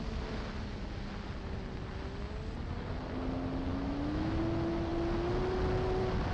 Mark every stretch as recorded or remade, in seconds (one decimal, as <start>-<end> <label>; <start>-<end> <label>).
0.0-3.7 recorded; 3.7-4.4 remade; 4.4-6.3 recorded